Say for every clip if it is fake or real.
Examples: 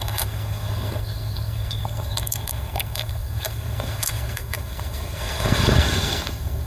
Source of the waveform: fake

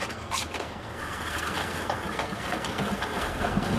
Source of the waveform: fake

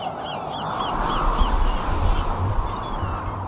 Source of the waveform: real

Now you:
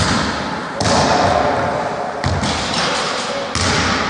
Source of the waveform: real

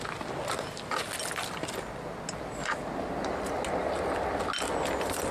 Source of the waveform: real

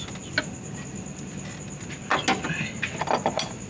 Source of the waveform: real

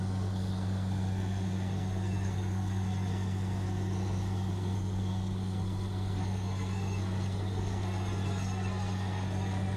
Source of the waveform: fake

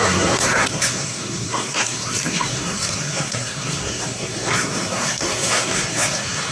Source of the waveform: fake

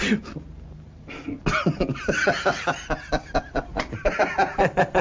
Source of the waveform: real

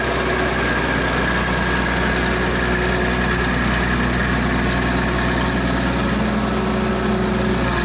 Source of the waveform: real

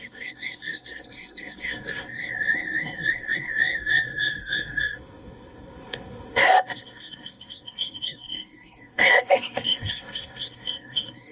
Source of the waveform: fake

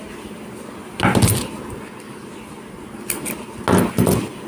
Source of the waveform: real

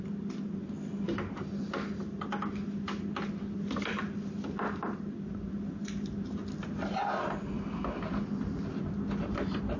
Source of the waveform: real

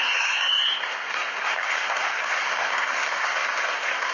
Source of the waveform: fake